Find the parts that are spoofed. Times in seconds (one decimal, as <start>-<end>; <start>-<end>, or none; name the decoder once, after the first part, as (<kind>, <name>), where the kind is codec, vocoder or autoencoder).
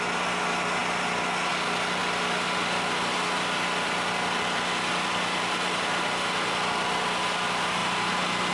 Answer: none